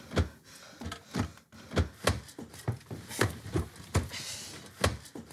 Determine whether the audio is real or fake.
real